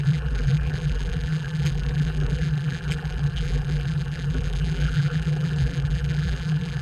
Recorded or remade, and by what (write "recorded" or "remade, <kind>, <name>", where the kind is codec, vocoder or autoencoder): remade, vocoder, BigVGAN v2